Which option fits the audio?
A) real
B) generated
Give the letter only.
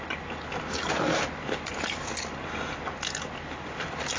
A